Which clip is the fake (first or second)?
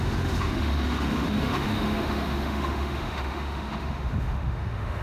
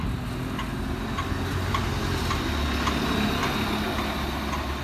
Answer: first